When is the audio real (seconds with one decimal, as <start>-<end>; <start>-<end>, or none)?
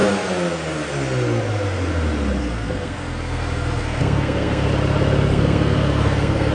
0.0-2.4; 4.7-5.3